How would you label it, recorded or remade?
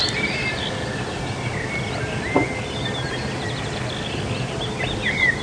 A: recorded